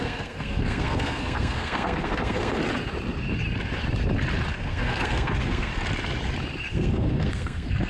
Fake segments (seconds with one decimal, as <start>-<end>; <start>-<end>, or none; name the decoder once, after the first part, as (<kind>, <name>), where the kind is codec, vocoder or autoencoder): 0.0-2.6 (codec, SNAC); 4.5-5.7; 6.7-7.9